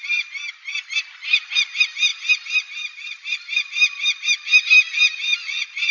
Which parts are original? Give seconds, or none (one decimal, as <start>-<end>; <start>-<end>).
0.0-5.4

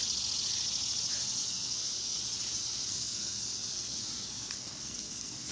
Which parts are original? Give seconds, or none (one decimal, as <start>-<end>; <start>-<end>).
0.0-1.4; 2.2-2.6

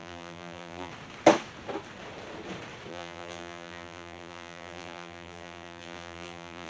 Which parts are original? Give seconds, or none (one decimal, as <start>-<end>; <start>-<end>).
0.9-2.9